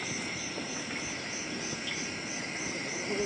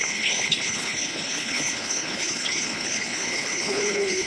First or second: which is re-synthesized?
second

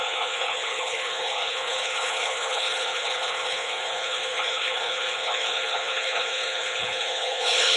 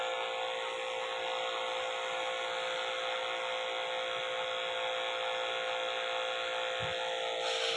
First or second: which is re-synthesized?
first